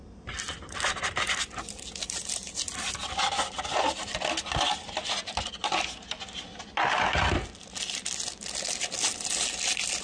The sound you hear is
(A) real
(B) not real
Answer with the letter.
A